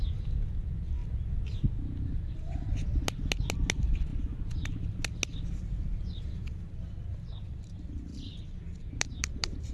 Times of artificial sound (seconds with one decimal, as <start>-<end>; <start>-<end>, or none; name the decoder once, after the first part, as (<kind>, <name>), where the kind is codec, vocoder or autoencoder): 8.1-9.7 (vocoder, BigVGAN v2)